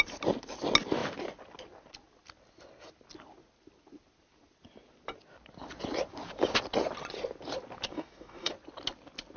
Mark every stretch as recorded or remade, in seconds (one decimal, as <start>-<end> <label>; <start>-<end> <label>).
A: 0.0-7.9 recorded; 7.9-8.5 remade; 8.5-9.4 recorded